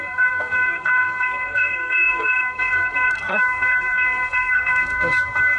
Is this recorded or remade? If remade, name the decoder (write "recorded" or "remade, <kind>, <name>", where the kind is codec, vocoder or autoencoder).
remade, codec, SNAC